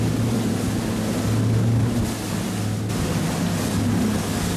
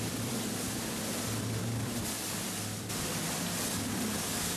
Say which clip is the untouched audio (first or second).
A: first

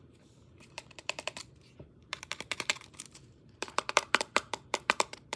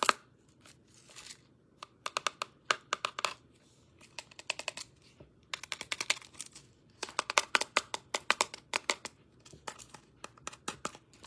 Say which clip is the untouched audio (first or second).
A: second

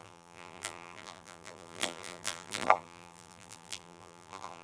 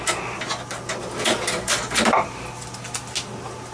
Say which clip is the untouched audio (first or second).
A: second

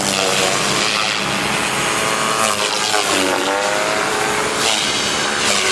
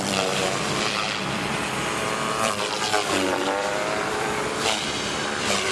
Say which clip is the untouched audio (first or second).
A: first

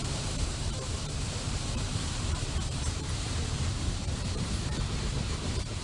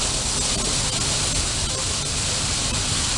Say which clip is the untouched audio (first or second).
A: second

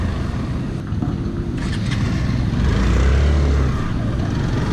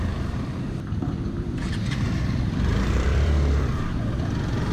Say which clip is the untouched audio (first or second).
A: first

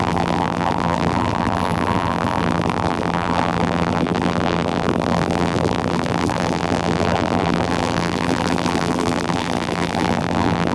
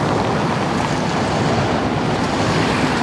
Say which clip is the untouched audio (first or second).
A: second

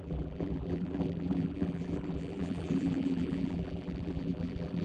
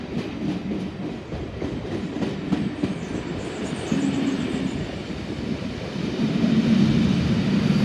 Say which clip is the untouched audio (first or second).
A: second